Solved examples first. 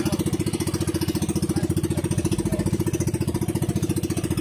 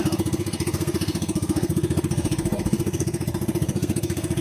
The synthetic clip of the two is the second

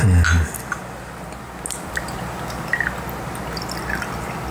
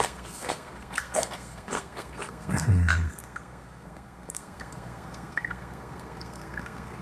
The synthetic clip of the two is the second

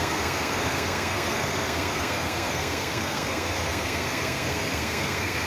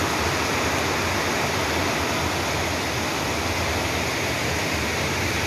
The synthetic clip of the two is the first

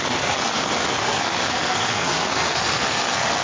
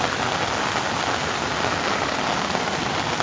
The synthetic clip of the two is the first